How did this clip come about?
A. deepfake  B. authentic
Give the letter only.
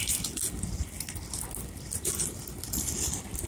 B